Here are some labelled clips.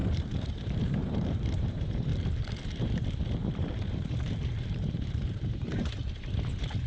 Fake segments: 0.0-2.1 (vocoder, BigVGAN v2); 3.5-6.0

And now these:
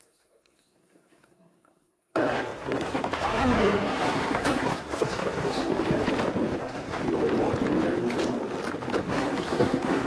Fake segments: 0.0-5.7 (codec, SNAC); 6.6-7.0; 9.0-10.1

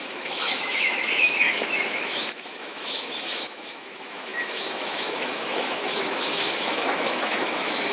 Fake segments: 0.0-7.9 (autoencoder, DAC-VAE)

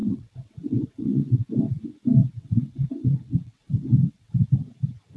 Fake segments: 0.0-1.5 (vocoder, WaveNeXt); 2.2-4.5